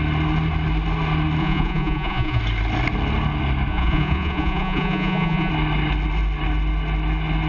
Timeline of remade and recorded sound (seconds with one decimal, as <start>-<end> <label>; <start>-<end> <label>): 0.0-1.4 recorded; 1.4-2.4 remade; 2.4-3.7 recorded; 3.7-5.5 remade; 5.5-7.5 recorded